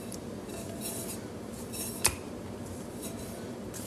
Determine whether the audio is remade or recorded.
remade